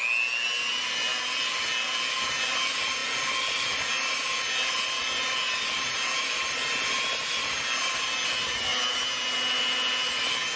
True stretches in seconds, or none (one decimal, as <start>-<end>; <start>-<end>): 0.0-10.6

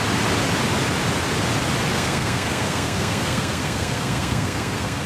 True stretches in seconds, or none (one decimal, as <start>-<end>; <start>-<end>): 0.0-1.9

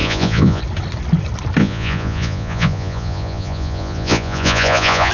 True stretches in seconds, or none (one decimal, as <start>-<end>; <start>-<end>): 0.6-1.6

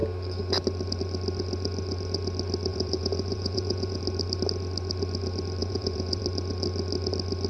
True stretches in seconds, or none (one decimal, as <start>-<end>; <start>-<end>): 0.0-2.7; 4.0-5.6; 6.2-7.5

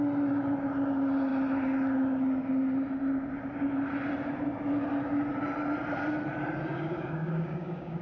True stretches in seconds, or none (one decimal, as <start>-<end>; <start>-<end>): 0.0-6.7

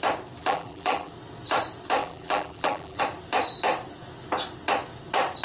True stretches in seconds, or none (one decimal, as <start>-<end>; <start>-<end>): 0.0-0.4; 1.1-2.0; 3.0-5.4